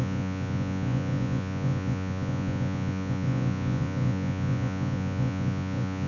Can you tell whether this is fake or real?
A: fake